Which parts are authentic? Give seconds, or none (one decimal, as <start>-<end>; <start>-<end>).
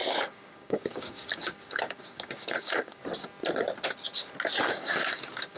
3.0-4.6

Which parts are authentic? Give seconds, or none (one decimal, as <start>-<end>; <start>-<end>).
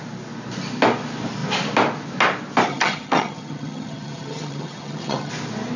0.0-2.7; 5.3-5.8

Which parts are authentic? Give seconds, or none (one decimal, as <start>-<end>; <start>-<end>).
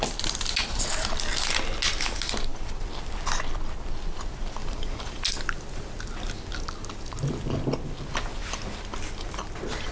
0.0-4.6; 5.2-9.9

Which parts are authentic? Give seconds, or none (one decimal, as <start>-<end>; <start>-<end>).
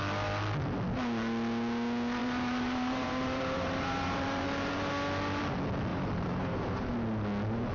0.0-2.2; 4.9-5.9; 6.9-7.7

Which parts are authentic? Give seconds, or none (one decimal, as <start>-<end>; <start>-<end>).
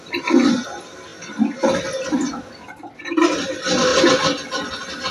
0.0-5.1